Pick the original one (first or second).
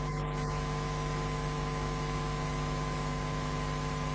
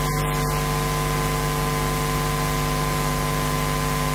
second